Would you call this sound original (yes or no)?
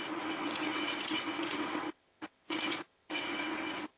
no